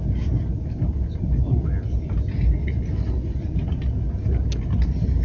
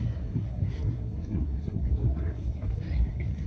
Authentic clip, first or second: first